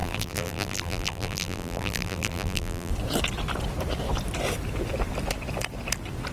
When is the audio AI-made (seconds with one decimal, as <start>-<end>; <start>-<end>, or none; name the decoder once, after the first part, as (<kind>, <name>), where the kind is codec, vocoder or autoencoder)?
0.0-2.9 (vocoder, BigVGAN v2)